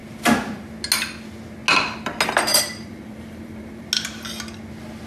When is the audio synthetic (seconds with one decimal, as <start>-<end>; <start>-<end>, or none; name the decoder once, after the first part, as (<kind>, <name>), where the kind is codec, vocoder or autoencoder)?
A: 2.5-3.9 (vocoder, BigVGAN v2)